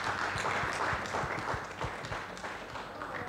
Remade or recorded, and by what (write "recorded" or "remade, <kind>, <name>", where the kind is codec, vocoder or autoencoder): recorded